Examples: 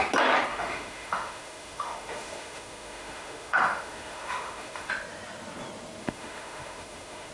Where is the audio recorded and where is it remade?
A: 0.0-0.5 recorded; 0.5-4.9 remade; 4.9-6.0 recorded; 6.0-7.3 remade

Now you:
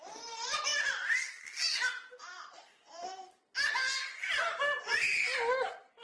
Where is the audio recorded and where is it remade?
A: 0.0-6.0 recorded